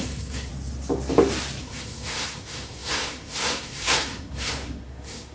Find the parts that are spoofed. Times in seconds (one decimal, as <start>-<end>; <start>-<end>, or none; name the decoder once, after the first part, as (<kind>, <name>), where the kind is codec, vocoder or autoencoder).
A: 0.0-0.5 (codec, SNAC); 1.6-5.3